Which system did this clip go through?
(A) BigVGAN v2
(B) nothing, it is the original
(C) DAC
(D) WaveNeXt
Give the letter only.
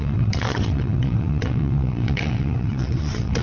D